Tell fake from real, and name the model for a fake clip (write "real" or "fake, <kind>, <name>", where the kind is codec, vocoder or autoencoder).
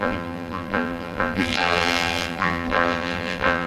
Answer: fake, vocoder, BigVGAN v2